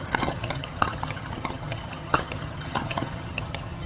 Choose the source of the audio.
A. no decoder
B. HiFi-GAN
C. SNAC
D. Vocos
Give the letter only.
B